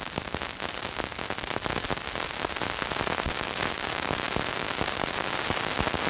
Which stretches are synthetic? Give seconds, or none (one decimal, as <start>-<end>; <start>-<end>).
none